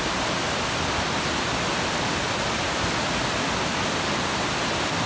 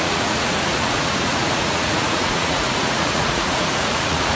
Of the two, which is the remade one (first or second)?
second